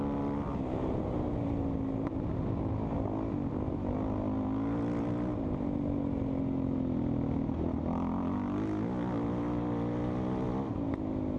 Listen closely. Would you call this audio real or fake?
real